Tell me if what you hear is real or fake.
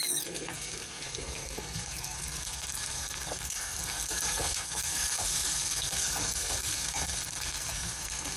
fake